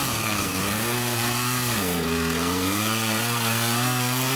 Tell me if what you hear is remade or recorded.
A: remade